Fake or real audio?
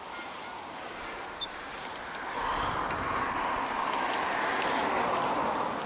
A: real